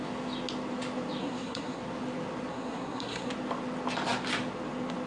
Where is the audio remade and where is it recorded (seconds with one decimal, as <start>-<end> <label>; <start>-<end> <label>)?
0.0-1.2 recorded; 1.2-1.8 remade; 1.8-2.5 recorded; 2.5-3.3 remade; 3.3-5.1 recorded